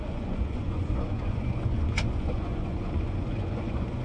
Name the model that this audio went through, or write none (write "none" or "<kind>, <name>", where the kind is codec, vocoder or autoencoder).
vocoder, Vocos